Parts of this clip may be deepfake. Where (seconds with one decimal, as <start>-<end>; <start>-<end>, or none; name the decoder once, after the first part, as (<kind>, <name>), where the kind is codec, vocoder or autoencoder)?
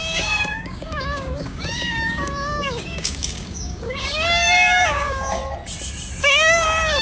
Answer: 0.0-5.4 (codec, DAC); 6.2-7.0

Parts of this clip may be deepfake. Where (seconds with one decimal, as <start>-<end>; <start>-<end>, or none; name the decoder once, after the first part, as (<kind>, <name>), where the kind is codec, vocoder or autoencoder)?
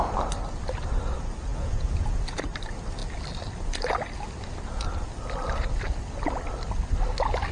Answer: 1.5-2.2 (vocoder, Vocos)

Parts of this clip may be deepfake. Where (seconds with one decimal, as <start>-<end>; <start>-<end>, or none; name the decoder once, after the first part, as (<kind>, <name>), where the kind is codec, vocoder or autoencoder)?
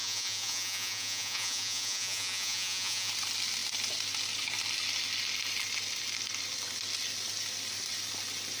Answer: 0.0-3.1 (vocoder, Vocos)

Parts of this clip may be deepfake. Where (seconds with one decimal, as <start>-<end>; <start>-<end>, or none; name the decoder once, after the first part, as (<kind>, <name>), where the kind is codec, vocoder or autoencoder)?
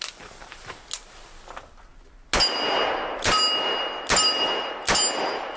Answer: none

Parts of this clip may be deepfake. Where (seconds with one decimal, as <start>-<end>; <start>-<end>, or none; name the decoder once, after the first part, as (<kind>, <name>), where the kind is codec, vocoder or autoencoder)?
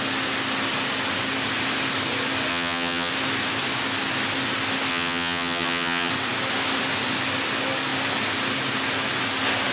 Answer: 2.5-3.1 (vocoder, HiFi-GAN); 4.9-6.1